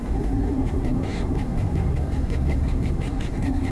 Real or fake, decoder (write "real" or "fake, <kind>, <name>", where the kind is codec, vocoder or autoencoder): fake, codec, SNAC